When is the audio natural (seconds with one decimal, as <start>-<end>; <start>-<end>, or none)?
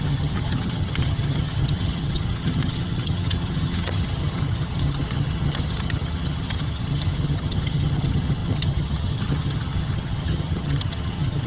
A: none